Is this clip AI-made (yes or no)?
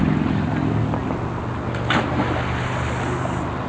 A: no